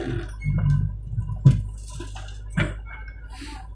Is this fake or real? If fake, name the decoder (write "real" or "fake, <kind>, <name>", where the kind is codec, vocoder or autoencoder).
real